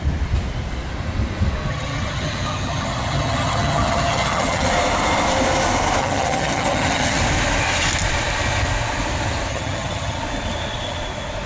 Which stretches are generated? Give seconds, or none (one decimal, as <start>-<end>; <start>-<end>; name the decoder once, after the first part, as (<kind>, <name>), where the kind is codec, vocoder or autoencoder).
1.7-4.7 (vocoder, HiFi-GAN); 6.0-7.2; 9.5-10.2